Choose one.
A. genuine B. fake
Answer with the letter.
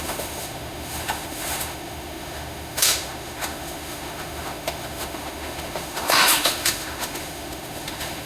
B